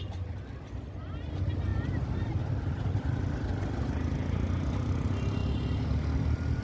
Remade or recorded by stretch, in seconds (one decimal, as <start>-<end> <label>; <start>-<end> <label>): 0.0-6.6 recorded